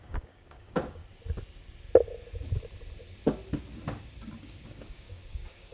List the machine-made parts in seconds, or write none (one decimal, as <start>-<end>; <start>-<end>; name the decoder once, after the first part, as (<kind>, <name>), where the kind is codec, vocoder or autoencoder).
0.0-1.0 (codec, DAC); 4.4-5.7